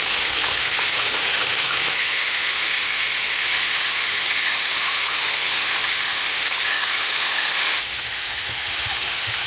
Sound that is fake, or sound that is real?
fake